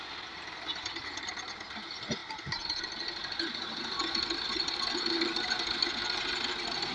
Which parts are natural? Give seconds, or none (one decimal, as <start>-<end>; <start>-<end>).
0.0-2.2; 2.8-6.9